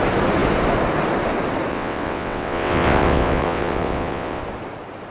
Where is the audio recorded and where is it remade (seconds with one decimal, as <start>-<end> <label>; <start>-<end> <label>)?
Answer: 0.0-1.7 recorded; 1.7-4.4 remade; 4.4-5.1 recorded